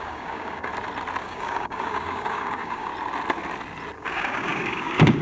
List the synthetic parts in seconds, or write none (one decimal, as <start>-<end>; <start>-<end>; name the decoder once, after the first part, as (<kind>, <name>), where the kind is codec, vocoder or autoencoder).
0.0-0.7 (codec, DAC); 1.2-2.9; 4.0-5.2